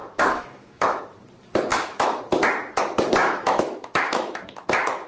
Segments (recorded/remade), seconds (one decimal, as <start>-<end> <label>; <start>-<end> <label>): 0.0-1.0 remade; 1.0-1.7 recorded; 1.7-2.2 remade; 2.2-3.2 recorded; 3.2-5.1 remade